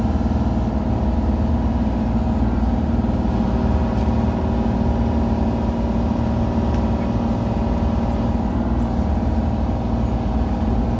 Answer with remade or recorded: recorded